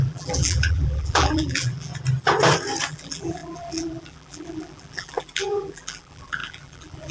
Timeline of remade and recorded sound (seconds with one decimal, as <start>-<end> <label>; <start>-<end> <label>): 0.0-1.9 remade; 1.9-2.9 recorded; 2.9-7.1 remade